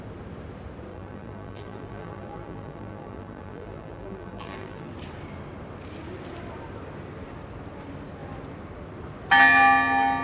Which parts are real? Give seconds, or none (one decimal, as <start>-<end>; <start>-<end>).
0.0-0.9; 4.9-10.2